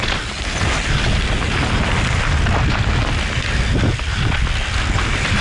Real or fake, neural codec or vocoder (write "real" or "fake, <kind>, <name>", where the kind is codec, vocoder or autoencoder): real